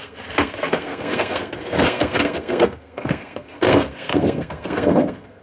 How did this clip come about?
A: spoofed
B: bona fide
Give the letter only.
A